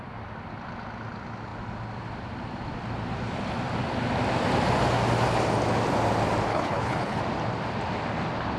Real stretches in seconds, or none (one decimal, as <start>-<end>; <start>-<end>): 0.0-6.5; 7.2-8.6